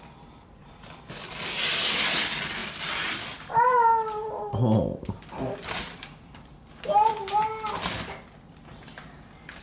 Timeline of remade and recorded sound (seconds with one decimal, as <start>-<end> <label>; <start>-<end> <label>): 0.0-9.6 recorded